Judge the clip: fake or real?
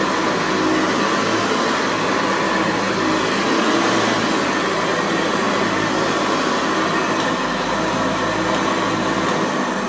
real